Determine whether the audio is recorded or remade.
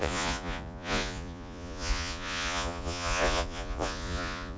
remade